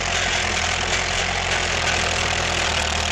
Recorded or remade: recorded